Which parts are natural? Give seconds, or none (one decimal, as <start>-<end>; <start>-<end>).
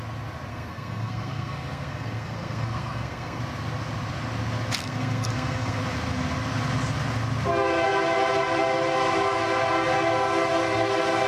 0.0-0.5; 3.4-4.8; 5.8-11.3